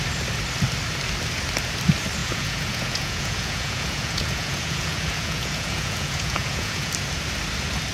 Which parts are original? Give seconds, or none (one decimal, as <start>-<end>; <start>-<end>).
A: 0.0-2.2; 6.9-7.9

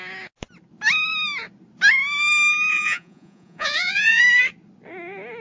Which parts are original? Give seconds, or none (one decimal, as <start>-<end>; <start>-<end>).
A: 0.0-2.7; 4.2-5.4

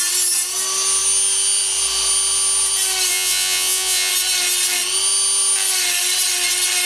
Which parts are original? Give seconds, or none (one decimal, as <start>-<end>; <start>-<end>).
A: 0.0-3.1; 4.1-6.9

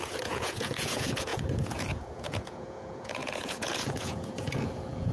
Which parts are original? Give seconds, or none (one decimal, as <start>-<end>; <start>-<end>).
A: none